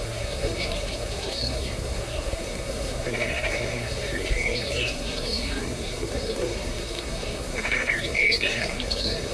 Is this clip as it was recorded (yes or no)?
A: no